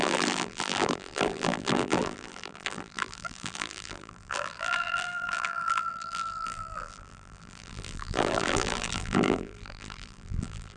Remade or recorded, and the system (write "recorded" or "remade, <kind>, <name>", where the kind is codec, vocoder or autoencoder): remade, vocoder, BigVGAN v2